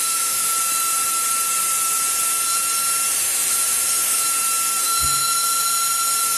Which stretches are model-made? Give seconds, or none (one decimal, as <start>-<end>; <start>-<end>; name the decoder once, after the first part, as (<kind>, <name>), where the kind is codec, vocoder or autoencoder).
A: 0.0-0.5 (autoencoder, DAC-VAE); 3.1-4.2; 4.8-6.4